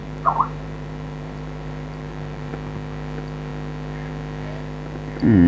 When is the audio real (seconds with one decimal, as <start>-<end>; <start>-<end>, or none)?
2.5-5.5